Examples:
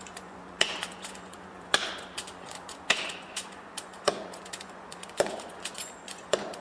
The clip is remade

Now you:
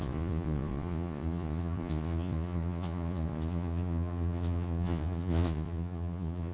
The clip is remade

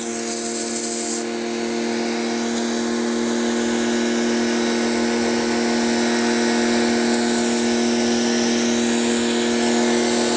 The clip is recorded